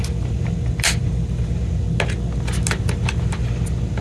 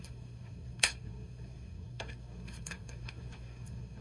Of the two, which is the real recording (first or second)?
first